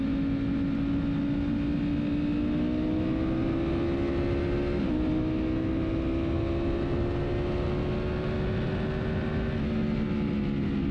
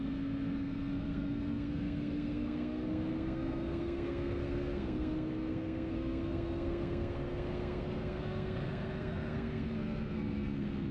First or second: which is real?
first